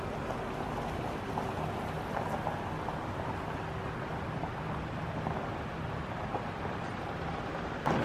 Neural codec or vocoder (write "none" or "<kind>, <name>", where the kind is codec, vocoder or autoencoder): none